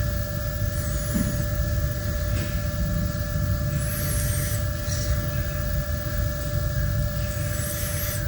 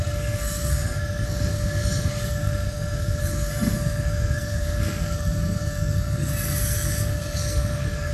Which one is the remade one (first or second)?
second